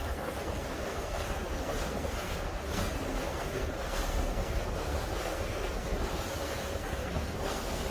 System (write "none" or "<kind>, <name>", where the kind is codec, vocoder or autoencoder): codec, SNAC